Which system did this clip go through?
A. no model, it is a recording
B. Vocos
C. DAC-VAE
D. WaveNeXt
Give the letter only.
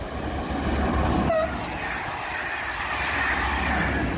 A